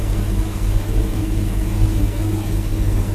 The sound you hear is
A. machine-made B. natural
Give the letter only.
A